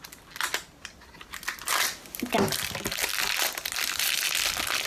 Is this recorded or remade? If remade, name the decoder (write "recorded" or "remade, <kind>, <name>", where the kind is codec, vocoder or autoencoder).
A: recorded